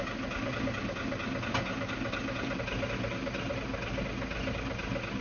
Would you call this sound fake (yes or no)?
no